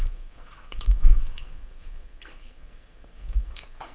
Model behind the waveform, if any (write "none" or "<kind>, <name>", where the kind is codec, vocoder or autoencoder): codec, SNAC